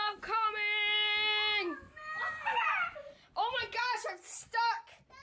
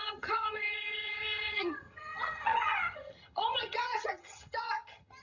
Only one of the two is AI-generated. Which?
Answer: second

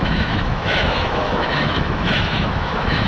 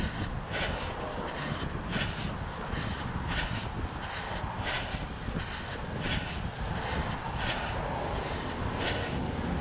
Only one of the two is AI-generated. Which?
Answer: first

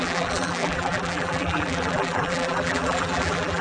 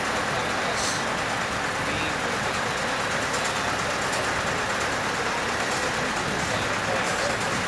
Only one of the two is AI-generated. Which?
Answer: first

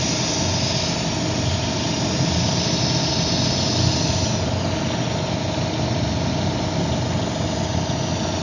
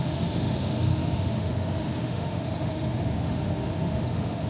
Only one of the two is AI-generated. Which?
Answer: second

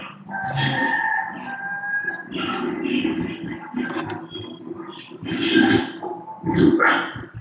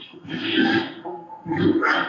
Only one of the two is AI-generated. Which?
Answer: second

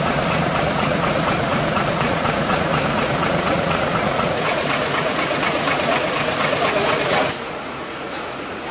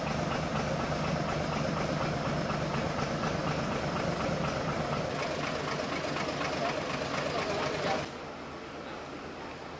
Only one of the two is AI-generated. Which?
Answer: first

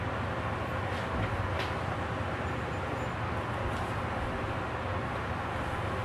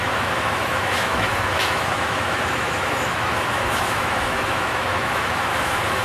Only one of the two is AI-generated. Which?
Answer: second